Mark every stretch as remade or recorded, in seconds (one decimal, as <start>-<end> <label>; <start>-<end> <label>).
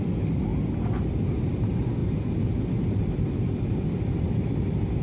0.0-5.0 recorded